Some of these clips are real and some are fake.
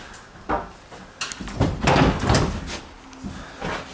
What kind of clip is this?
real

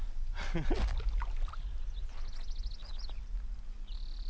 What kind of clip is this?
real